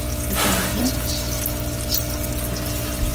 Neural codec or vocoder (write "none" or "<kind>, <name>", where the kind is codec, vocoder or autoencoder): none